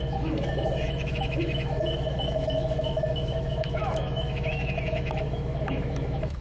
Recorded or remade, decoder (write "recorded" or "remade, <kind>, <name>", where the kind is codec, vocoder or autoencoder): remade, autoencoder, DAC-VAE